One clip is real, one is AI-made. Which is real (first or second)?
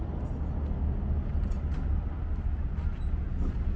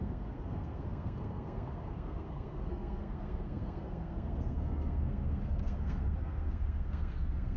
first